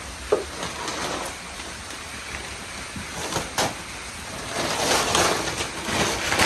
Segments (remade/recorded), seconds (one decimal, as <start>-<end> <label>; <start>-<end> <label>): 0.0-0.9 recorded; 0.9-2.5 remade; 2.5-6.5 recorded